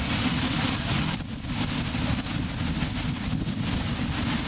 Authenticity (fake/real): real